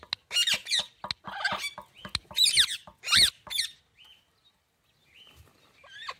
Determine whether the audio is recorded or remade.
recorded